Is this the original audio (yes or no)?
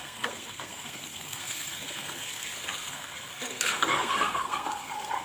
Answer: no